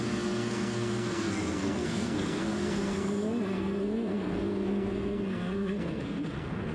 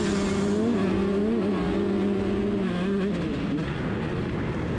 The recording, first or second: second